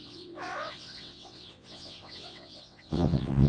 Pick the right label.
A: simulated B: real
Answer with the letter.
A